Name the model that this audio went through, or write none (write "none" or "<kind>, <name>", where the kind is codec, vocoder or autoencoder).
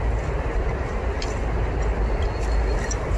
none